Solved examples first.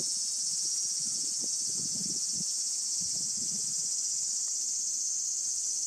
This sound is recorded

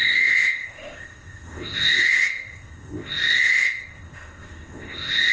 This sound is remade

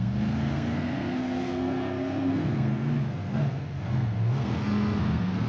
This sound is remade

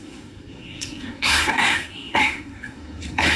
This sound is remade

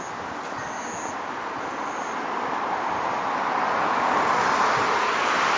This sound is recorded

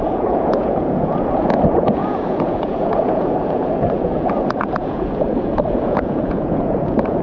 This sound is remade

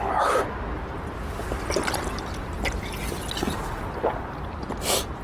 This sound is recorded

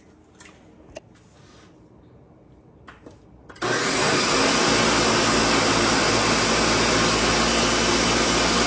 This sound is recorded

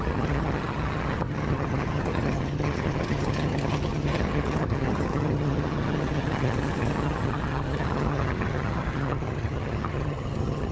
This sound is remade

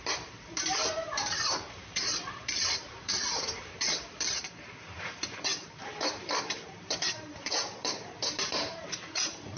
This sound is remade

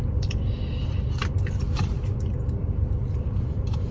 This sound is recorded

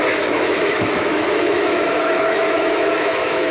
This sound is remade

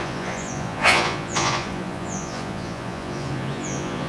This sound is remade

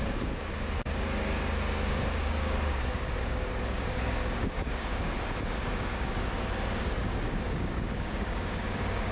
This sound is remade